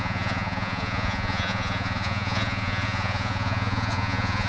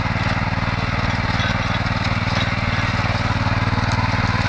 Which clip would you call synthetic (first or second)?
first